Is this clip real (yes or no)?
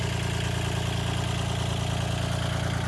yes